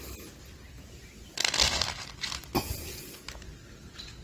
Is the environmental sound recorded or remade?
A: recorded